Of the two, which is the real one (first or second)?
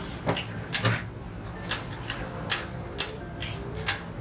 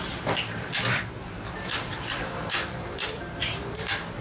first